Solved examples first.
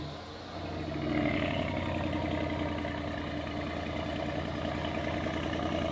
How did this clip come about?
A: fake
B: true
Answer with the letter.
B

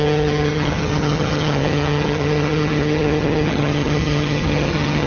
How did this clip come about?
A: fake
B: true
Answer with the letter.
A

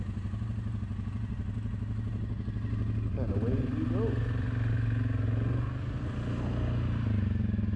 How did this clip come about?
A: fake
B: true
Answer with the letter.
B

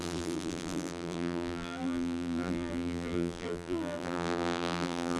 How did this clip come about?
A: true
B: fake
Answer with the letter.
B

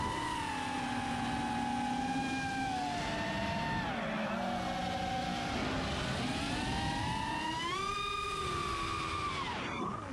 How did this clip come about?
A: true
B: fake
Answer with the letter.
A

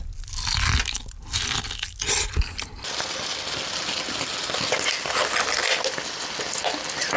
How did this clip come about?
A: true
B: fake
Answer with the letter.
A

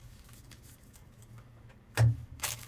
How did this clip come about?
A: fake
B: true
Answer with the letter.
A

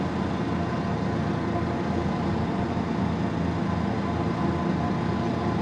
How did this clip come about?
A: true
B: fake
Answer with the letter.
A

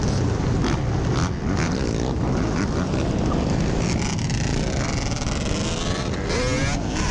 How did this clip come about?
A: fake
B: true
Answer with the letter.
B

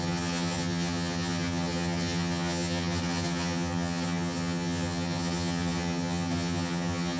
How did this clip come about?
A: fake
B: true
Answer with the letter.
A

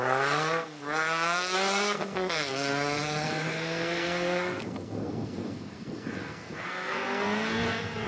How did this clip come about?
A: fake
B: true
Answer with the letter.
A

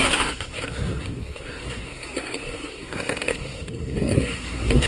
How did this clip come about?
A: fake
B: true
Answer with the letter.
A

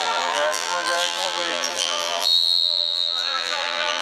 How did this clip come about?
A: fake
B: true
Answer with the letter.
A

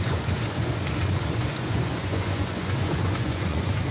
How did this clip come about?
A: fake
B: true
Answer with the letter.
A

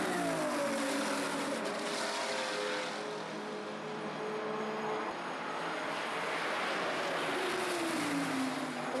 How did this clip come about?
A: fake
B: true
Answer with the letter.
B